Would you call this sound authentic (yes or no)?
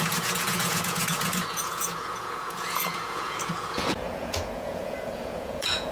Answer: no